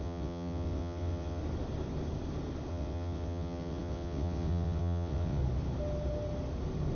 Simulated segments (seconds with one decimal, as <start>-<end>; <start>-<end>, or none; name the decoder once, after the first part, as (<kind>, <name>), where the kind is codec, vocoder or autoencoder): 0.0-1.4 (vocoder, WaveNeXt); 2.7-5.4